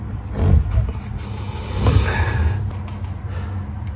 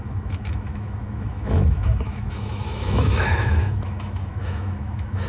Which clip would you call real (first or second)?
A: first